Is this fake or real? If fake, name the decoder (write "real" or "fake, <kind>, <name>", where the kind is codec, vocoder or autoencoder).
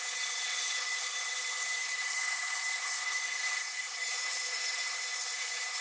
fake, codec, HILCodec